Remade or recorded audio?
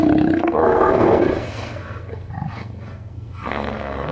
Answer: remade